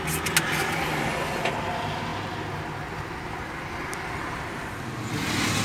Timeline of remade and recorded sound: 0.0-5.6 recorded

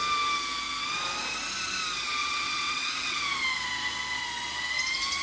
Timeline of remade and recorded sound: 0.0-2.2 recorded; 2.2-3.2 remade; 3.2-5.2 recorded

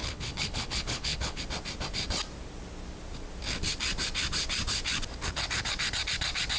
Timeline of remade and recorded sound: 0.0-1.4 remade; 1.4-6.6 recorded

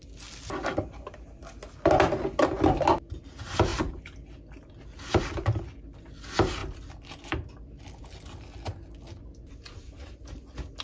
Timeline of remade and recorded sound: 0.0-10.8 recorded